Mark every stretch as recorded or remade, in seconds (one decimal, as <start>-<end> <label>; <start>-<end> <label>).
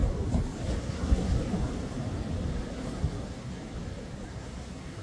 0.0-0.8 recorded; 0.8-1.3 remade; 1.3-2.7 recorded; 2.7-3.6 remade; 3.6-4.3 recorded; 4.3-5.0 remade